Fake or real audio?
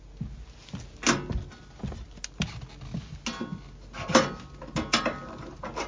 real